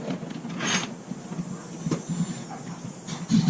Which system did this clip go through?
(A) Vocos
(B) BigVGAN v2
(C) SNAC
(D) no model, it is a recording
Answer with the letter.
D